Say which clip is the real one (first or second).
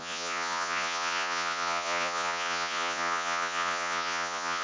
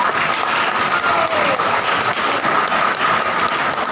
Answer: second